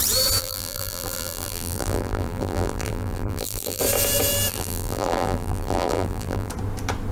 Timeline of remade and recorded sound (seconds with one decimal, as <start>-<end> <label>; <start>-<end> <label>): 0.0-0.4 recorded; 0.4-3.8 remade; 3.8-4.5 recorded; 4.5-6.5 remade; 6.5-7.1 recorded